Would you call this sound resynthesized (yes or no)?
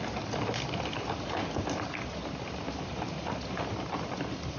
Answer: no